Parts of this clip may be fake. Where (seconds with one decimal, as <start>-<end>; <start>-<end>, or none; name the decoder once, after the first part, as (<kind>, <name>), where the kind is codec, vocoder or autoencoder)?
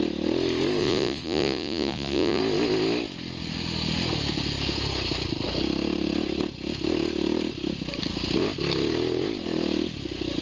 0.8-2.4 (vocoder, Vocos)